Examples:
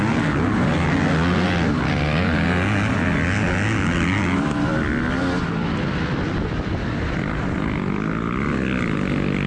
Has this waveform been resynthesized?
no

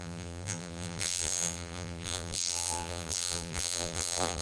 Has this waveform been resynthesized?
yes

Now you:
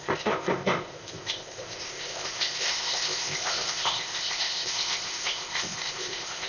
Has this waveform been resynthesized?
yes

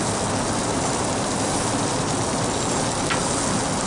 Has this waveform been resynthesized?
no